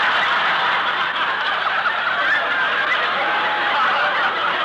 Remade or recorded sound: remade